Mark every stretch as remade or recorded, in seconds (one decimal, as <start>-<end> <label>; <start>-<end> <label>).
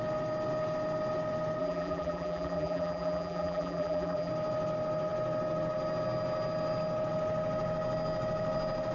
0.0-1.6 recorded; 1.6-4.3 remade; 4.3-8.9 recorded